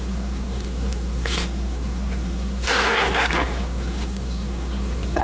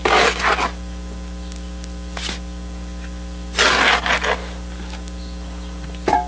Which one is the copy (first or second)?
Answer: first